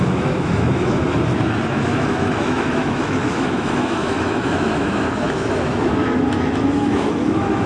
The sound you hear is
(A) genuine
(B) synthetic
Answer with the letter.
B